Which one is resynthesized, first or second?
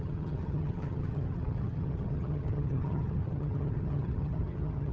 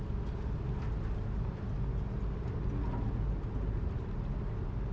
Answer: first